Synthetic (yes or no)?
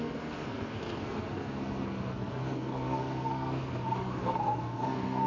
yes